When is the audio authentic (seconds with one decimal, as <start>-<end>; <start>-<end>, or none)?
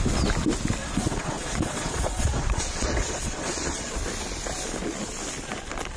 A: 0.0-0.8; 3.9-6.0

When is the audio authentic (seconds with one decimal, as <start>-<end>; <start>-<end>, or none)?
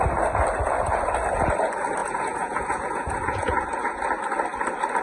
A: 0.0-2.0; 4.0-5.0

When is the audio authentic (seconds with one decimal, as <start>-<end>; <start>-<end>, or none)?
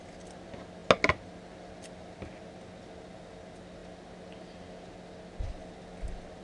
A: 0.0-6.4